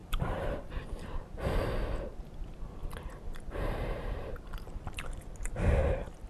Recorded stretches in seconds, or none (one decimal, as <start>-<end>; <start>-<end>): 0.7-2.8; 5.5-6.3